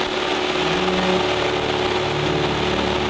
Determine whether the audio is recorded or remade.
recorded